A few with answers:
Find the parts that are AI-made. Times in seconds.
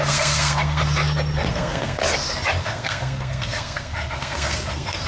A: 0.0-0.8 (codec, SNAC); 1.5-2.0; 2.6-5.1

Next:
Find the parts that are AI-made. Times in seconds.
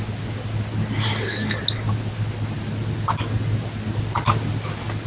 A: none